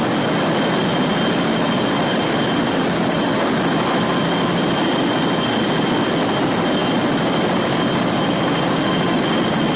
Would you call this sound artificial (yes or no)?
no